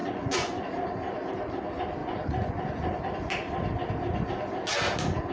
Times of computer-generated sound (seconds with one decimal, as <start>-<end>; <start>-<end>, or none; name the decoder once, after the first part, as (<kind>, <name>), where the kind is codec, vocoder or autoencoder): 0.0-0.6 (vocoder, Vocos); 2.0-3.0

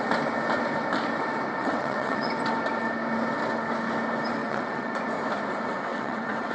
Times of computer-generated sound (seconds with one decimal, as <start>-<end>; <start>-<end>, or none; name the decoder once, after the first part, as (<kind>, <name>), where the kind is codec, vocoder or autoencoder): 1.6-2.3 (vocoder, WaveNeXt); 4.4-5.0; 5.9-6.5

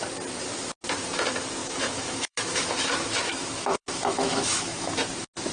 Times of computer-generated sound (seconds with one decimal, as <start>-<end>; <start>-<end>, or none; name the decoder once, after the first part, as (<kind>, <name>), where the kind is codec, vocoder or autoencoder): 1.6-4.9 (autoencoder, DAC-VAE)